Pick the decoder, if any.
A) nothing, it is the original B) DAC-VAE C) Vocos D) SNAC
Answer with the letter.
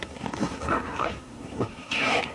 D